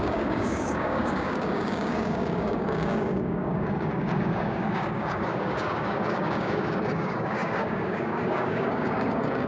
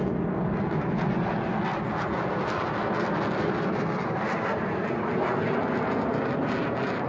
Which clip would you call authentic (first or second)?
second